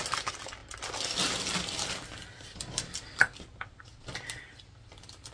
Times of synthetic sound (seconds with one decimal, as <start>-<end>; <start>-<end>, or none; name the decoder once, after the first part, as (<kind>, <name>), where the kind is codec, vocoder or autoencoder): none